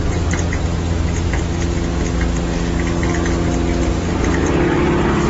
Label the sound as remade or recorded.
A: recorded